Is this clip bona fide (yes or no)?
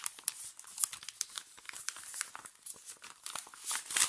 yes